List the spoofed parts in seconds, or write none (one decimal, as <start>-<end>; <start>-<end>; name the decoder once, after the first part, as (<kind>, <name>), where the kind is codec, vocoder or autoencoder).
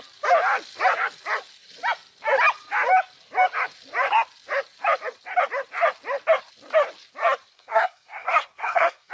7.5-9.1 (codec, SNAC)